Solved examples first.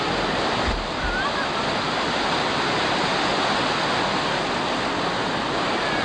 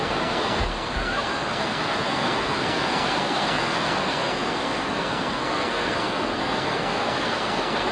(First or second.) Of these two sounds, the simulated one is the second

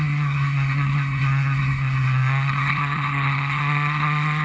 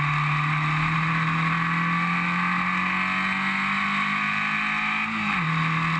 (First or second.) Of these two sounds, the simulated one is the first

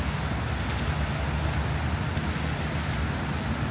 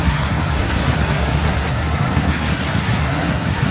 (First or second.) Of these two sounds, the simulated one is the second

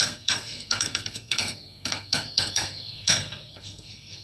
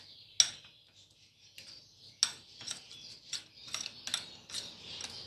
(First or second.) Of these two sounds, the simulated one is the first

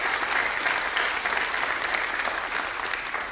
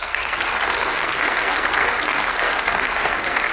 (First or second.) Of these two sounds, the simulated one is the second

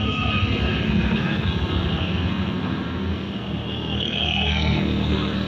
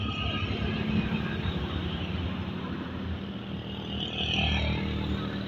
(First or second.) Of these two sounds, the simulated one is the first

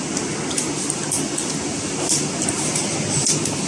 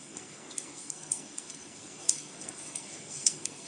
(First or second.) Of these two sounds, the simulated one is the second